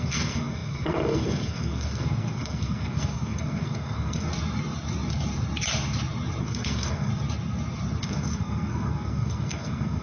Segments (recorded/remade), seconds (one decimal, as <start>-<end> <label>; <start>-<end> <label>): 0.0-4.3 remade; 4.3-6.4 recorded; 6.4-7.1 remade; 7.1-8.0 recorded; 8.0-10.0 remade